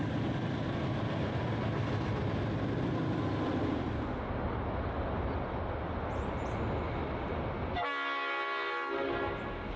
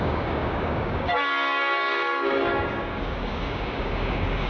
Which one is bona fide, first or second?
first